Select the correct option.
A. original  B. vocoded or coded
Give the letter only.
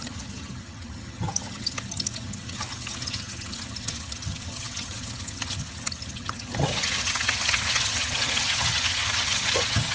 B